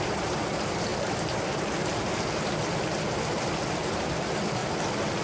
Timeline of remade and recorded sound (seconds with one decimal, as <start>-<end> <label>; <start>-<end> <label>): 0.0-0.9 remade; 0.9-4.0 recorded; 4.0-4.6 remade; 4.6-5.2 recorded